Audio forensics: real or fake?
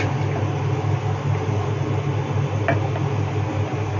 real